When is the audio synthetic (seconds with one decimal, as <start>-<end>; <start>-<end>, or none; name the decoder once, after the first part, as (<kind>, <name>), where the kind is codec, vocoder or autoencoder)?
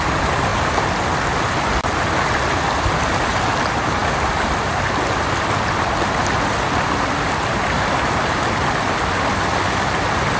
none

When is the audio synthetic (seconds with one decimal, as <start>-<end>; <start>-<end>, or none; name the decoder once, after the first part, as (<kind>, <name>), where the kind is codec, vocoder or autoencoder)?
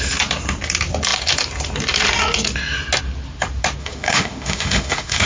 3.8-5.3 (autoencoder, DAC-VAE)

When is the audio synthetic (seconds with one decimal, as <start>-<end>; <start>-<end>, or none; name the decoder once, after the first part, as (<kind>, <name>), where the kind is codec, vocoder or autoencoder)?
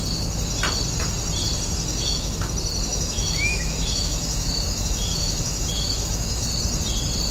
1.9-2.5 (autoencoder, DAC-VAE); 2.9-6.5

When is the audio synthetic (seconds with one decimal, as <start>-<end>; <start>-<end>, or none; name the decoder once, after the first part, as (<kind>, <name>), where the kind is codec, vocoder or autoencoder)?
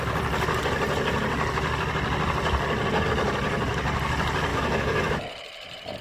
4.5-5.2 (autoencoder, DAC-VAE)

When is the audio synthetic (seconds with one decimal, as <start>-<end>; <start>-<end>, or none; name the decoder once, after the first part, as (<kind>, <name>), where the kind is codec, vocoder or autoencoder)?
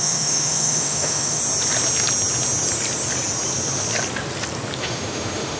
0.0-1.4 (autoencoder, DAC-VAE); 4.8-5.6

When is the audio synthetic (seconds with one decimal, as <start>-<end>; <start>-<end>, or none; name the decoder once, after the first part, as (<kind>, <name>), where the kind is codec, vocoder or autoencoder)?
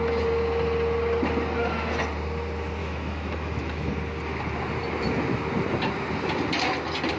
2.8-3.9 (autoencoder, DAC-VAE)